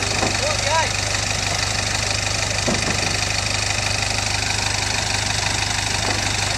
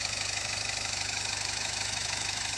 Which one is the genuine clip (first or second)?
first